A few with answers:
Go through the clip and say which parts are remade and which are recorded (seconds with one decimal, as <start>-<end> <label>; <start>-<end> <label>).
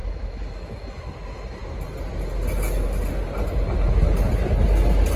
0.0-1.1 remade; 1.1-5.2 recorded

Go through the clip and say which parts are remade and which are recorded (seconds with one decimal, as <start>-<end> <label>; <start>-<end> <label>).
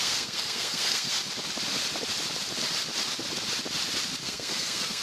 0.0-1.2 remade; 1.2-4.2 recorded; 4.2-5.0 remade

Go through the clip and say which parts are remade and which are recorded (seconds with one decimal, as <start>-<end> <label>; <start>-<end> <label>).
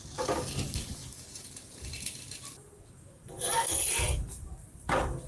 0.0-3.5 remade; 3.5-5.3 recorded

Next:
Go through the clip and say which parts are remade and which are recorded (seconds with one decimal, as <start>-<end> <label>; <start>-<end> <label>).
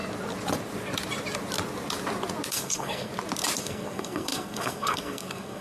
0.0-2.5 recorded; 2.5-3.1 remade; 3.1-3.6 recorded; 3.6-5.6 remade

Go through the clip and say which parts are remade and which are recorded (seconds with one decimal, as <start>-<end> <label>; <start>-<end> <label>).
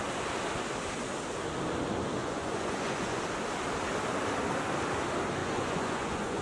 0.0-2.2 recorded; 2.2-3.2 remade; 3.2-5.4 recorded; 5.4-6.4 remade